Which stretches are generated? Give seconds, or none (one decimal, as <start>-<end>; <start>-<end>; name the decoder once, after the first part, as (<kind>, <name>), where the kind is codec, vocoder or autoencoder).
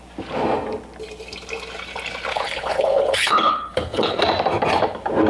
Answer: 2.3-4.2 (codec, HILCodec)